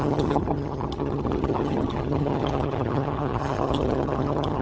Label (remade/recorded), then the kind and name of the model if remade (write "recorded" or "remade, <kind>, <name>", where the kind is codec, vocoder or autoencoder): remade, vocoder, HiFi-GAN